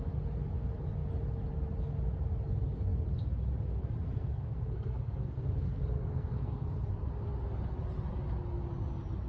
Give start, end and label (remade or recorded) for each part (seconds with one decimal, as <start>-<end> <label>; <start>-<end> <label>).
0.0-4.0 recorded; 4.0-6.7 remade; 6.7-9.3 recorded